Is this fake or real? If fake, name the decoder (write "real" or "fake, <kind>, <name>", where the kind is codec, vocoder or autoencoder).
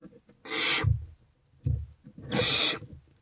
real